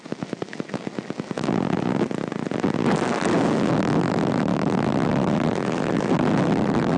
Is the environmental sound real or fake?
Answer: real